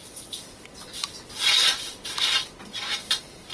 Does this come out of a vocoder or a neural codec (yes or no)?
no